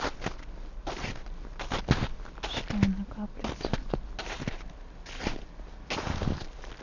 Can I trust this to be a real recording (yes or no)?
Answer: yes